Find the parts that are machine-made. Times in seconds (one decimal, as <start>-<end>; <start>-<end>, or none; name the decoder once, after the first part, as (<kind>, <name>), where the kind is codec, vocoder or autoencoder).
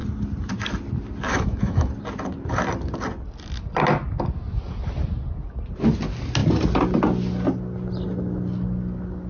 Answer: 1.3-1.9 (autoencoder, DAC-VAE)